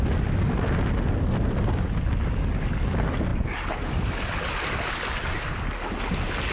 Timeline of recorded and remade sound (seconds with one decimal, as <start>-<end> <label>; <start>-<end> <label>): 0.0-6.5 recorded